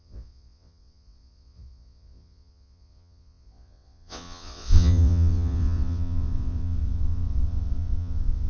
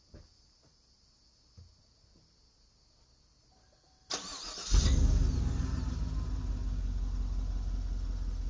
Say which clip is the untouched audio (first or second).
second